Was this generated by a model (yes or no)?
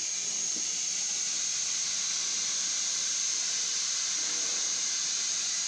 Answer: yes